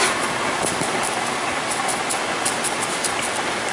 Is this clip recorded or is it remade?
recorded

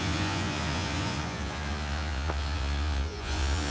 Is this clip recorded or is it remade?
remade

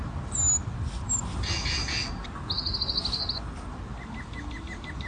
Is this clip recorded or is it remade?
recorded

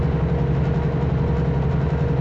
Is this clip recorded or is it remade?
recorded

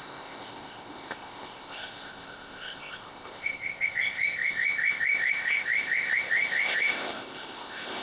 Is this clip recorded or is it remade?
remade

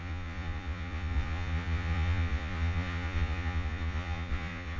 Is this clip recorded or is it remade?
remade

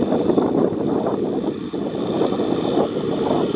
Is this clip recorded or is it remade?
recorded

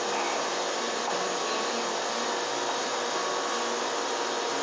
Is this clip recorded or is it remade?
recorded